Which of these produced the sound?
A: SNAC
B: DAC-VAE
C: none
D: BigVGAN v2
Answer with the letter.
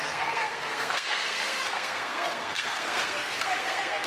A